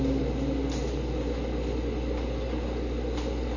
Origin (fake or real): real